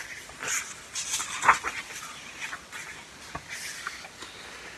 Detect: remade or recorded recorded